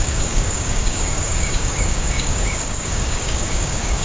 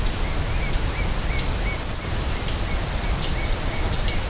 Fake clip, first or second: first